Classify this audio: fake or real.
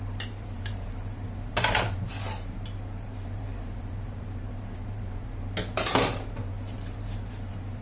fake